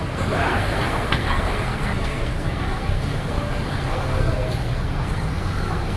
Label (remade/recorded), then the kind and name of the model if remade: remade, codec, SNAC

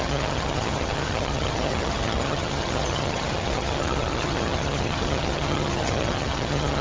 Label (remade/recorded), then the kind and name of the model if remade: remade, vocoder, HiFi-GAN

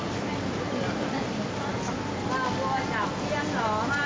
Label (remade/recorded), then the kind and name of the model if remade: recorded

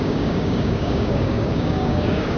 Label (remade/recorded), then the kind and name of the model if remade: remade, codec, DAC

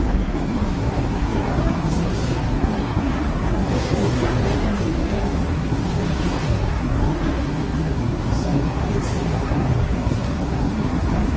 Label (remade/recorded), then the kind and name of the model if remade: remade, codec, SNAC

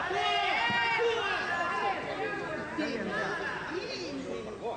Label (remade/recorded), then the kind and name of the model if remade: recorded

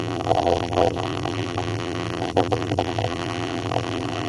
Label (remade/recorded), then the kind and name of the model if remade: remade, vocoder, BigVGAN v2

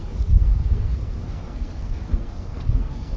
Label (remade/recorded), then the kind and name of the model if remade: remade, codec, SNAC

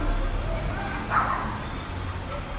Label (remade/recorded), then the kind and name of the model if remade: recorded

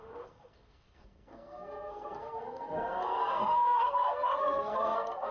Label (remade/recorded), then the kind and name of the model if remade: remade, codec, SNAC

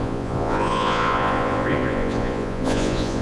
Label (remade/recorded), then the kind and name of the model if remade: remade, vocoder, Vocos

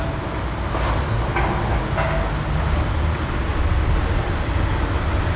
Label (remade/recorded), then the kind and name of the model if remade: recorded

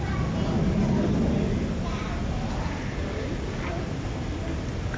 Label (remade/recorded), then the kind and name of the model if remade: recorded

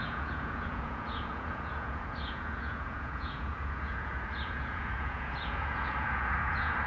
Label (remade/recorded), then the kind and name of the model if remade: remade, vocoder, Vocos